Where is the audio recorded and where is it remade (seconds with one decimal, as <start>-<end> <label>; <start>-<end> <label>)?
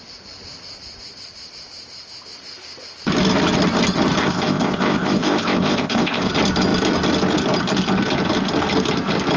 0.0-4.2 recorded; 4.2-6.3 remade; 6.3-9.4 recorded